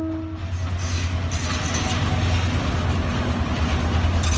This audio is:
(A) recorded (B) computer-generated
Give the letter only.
A